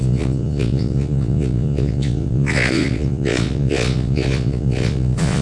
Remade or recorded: remade